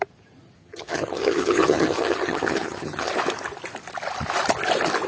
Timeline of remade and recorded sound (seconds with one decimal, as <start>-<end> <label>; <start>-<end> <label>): 0.0-0.6 recorded; 0.6-3.1 remade; 3.1-5.1 recorded